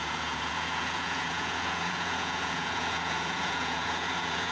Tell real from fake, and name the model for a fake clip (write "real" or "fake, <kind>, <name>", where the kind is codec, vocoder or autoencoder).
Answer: fake, vocoder, Vocos